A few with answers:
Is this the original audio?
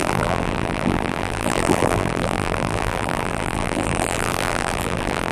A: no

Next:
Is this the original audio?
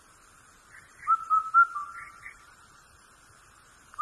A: yes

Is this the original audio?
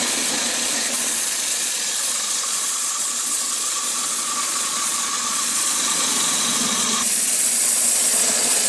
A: no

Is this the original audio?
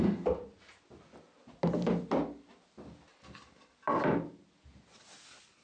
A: yes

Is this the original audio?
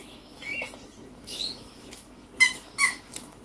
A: no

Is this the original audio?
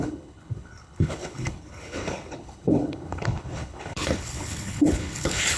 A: no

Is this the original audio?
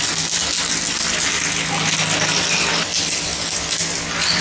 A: yes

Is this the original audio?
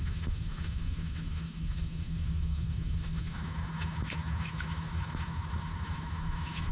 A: no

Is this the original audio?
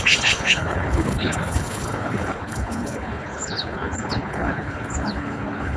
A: no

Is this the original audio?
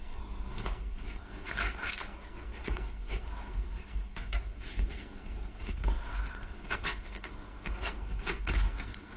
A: no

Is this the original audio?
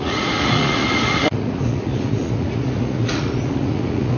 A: no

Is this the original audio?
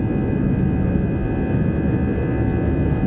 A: yes